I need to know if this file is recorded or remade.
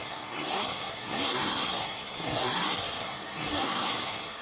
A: remade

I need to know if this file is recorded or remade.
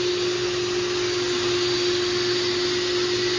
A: recorded